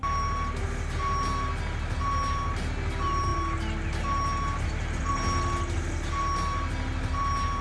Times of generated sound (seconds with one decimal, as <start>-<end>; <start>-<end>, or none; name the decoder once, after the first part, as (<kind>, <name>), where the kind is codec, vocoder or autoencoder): none